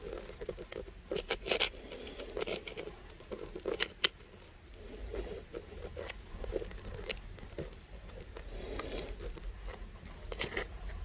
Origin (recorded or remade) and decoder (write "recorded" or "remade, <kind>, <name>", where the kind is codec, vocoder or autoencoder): recorded